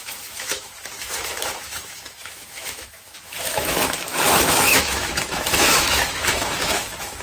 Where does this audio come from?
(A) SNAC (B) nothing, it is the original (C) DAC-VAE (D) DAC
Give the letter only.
C